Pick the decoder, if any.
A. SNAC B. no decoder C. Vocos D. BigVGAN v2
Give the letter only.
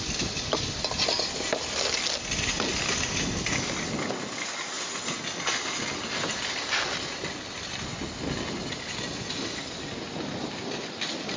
B